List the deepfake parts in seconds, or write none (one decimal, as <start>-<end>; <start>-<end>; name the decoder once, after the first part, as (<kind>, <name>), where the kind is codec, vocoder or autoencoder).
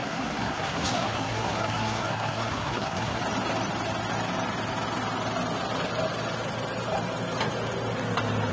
0.0-3.2 (codec, SNAC)